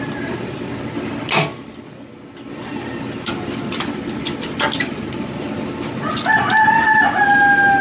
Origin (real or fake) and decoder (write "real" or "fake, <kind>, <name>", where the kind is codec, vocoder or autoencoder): real